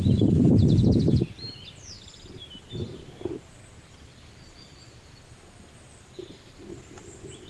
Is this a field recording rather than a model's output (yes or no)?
yes